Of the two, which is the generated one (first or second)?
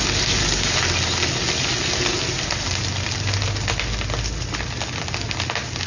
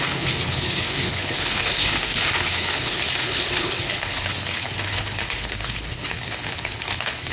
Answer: second